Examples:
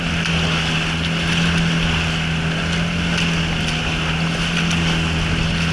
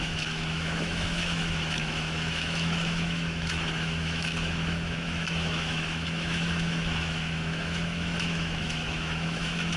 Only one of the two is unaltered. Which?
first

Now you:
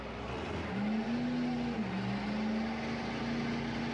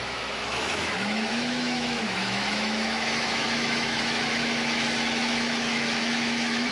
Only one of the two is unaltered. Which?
first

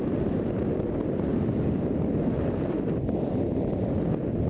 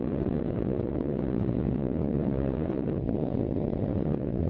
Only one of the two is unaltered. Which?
first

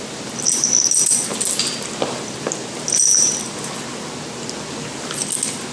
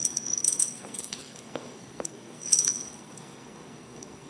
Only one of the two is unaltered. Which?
first